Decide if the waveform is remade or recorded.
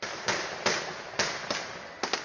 recorded